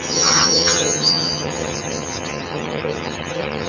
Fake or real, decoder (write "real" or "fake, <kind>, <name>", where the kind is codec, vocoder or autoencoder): fake, vocoder, HiFi-GAN